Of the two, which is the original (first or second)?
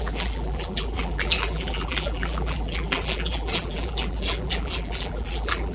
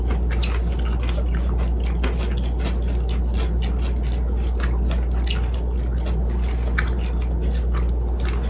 second